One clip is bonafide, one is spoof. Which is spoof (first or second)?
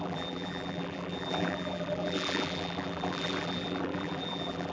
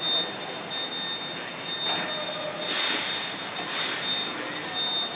first